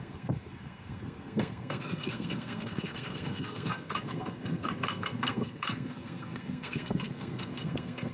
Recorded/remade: remade